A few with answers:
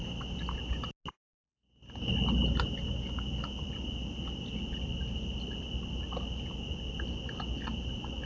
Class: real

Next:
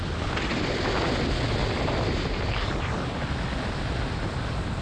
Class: real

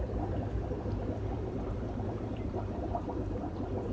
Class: fake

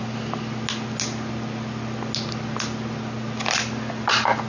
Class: real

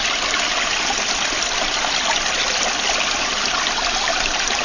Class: real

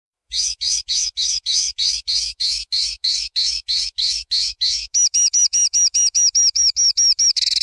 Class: fake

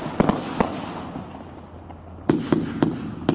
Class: real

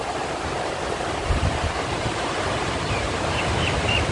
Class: fake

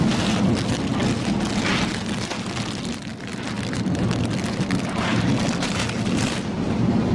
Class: real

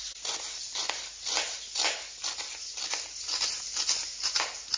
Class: real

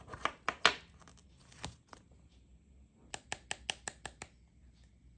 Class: real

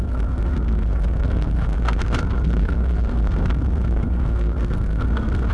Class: fake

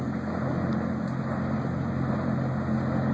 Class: real